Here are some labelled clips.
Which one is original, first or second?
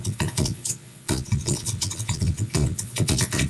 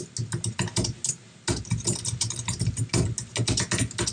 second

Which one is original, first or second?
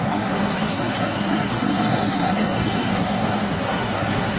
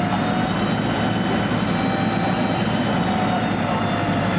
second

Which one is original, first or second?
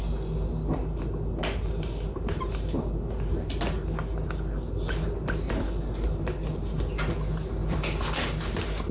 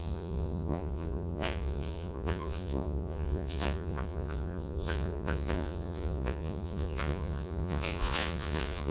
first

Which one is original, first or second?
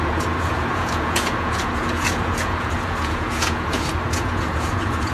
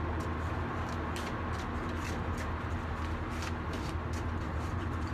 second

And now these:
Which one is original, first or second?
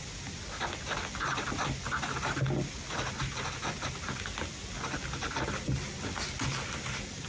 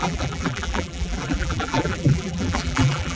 first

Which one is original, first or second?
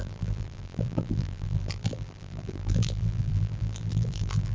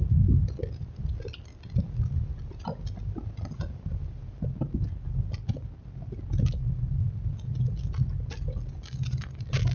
second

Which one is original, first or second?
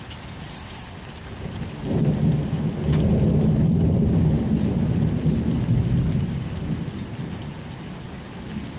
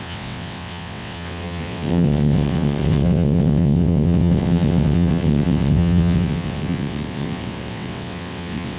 first